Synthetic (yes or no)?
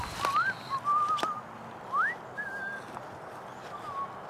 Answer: no